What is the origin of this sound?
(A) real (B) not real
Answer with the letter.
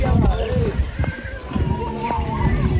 B